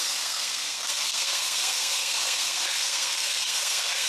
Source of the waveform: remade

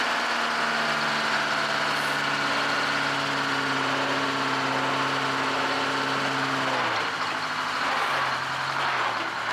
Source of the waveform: recorded